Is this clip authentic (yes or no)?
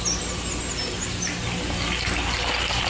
yes